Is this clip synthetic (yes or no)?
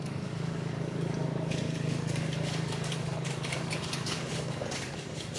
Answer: yes